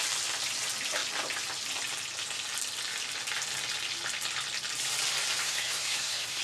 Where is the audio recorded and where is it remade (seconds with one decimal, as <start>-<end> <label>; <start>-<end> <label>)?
0.0-5.4 recorded; 5.4-6.4 remade